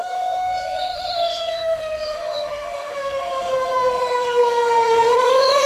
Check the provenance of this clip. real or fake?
fake